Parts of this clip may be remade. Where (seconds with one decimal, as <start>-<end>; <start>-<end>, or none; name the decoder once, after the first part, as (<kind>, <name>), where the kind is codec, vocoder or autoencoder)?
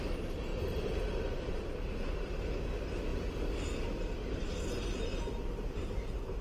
none